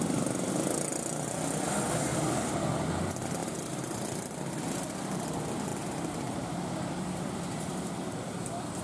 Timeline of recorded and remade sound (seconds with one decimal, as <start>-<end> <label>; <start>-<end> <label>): 0.0-3.4 recorded; 3.4-5.3 remade; 5.3-5.7 recorded; 5.7-7.4 remade; 7.4-8.8 recorded